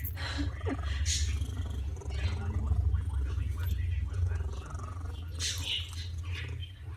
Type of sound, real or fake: real